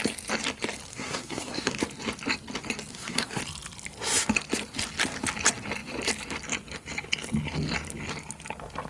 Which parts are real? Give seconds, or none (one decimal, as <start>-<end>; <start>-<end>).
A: 0.0-0.9; 1.8-2.9; 3.4-8.9